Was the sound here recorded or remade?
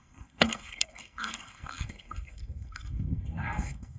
remade